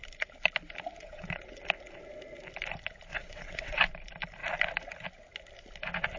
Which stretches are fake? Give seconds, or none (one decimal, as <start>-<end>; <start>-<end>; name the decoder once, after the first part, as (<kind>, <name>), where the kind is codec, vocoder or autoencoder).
1.0-1.6 (vocoder, WaveNeXt); 3.1-3.8

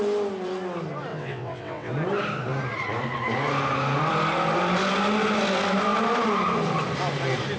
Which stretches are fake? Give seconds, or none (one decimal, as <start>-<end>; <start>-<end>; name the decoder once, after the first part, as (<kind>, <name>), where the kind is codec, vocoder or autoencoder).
1.1-1.9 (vocoder, WaveNeXt)

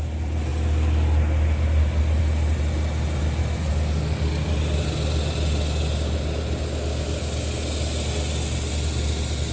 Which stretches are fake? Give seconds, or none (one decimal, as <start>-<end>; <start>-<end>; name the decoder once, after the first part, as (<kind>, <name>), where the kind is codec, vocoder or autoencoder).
none

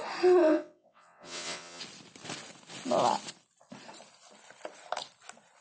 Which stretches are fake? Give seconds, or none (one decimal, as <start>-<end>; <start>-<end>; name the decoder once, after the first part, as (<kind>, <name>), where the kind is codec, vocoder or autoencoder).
0.4-1.8 (vocoder, WaveNeXt)

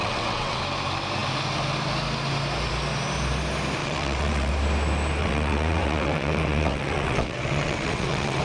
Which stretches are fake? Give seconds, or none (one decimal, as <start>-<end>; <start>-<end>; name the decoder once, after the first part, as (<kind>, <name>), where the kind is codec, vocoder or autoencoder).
0.0-0.6 (vocoder, WaveNeXt); 3.8-4.5; 5.2-8.4